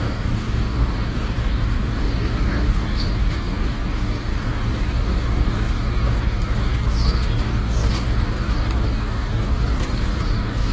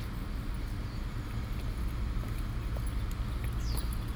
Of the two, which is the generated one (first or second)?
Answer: first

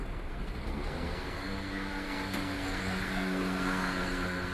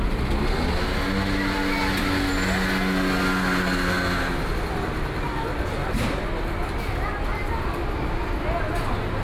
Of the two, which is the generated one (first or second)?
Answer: first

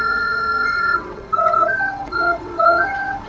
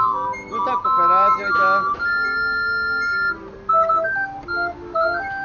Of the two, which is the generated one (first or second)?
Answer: first